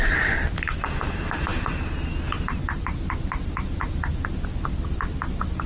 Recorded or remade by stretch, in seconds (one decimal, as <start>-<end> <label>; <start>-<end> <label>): 0.0-5.7 recorded